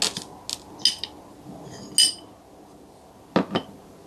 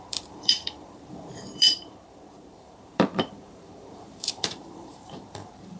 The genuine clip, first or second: first